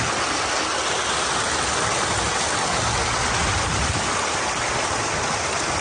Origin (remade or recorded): recorded